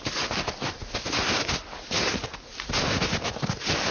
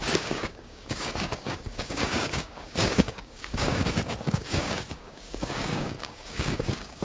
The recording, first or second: first